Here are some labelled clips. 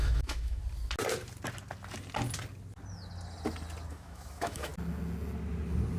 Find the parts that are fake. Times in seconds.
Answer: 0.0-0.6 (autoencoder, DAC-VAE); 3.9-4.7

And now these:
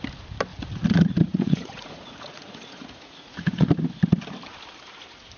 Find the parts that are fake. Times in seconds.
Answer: 0.5-3.7 (vocoder, Vocos)

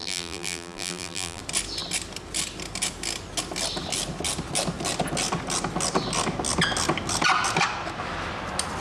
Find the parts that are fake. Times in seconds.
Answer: 0.0-1.4 (vocoder, BigVGAN v2)

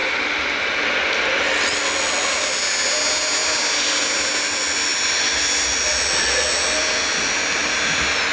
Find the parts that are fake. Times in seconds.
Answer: none